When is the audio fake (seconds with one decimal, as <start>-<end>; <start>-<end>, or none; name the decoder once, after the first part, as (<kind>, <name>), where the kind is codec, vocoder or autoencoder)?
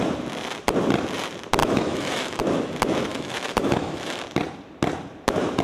1.6-2.4 (autoencoder, DAC-VAE); 3.1-4.2